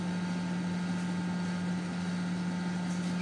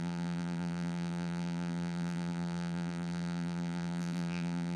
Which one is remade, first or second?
second